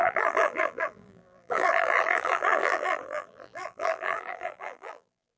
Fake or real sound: fake